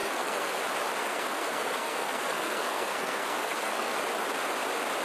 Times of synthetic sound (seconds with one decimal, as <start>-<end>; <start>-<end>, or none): 0.0-0.6; 1.0-4.0